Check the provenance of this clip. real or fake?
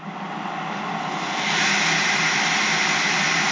real